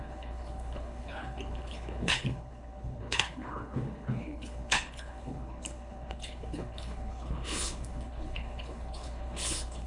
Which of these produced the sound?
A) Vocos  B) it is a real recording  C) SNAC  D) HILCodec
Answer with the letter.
D